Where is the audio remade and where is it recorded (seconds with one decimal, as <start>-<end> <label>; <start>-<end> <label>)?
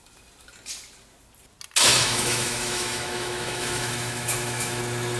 0.0-1.9 recorded; 1.9-4.8 remade; 4.8-5.2 recorded